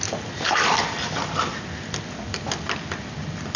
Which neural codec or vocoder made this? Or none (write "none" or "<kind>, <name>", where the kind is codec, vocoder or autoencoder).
vocoder, BigVGAN v2